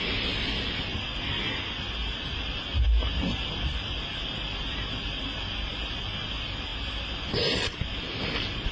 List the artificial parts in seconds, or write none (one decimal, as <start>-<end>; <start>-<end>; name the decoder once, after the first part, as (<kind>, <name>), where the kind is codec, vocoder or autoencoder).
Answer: none